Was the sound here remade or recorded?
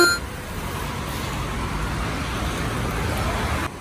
recorded